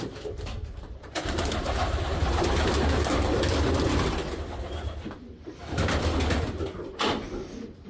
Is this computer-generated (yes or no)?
no